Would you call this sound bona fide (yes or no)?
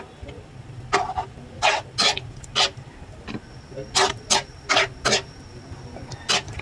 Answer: yes